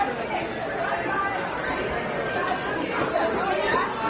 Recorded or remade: recorded